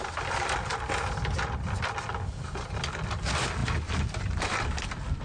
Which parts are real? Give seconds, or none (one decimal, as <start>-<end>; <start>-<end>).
0.0-5.2